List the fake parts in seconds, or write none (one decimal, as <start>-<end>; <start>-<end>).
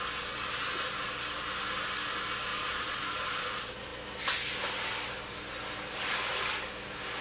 2.5-3.5